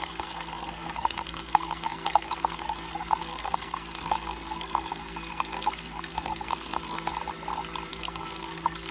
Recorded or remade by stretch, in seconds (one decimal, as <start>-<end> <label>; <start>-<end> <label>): 0.0-7.1 remade; 7.1-7.9 recorded; 7.9-8.9 remade